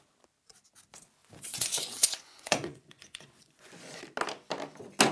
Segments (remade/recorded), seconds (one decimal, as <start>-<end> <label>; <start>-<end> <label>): 0.0-1.2 recorded; 1.2-4.0 remade; 4.0-5.1 recorded